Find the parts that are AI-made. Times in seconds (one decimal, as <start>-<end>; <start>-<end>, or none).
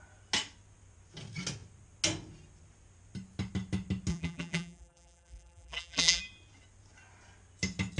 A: 4.1-6.2